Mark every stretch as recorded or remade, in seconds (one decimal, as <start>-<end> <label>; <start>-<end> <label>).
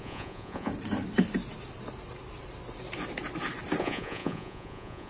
0.0-0.7 remade; 0.7-3.8 recorded; 3.8-5.1 remade